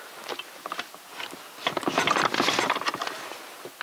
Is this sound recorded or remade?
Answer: recorded